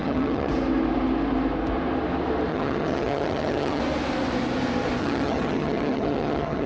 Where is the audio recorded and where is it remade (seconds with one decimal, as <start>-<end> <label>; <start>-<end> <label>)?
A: 0.0-0.5 remade; 0.5-2.5 recorded; 2.5-3.8 remade; 3.8-5.0 recorded; 5.0-6.7 remade